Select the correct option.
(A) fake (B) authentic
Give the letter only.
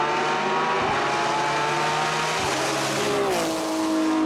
B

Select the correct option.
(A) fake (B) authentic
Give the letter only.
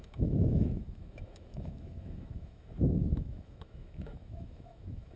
A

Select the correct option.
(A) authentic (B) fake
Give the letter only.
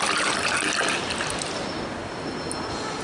A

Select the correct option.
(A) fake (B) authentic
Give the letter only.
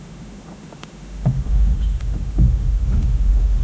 A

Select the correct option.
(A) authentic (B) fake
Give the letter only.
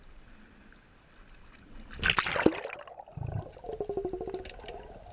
A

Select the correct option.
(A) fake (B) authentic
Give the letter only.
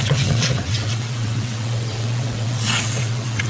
A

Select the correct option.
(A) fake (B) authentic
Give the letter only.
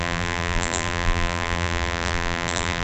A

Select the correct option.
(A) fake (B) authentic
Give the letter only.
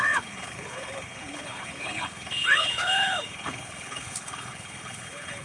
A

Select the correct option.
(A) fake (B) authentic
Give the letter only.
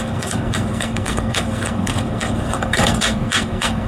A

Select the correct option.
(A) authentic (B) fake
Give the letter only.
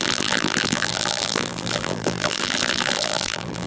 B